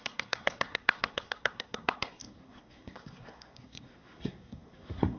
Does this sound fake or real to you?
fake